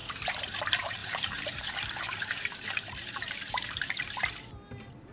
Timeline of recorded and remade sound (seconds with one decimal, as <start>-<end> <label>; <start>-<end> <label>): 0.0-0.6 remade; 0.6-1.0 recorded; 1.0-4.1 remade; 4.1-5.1 recorded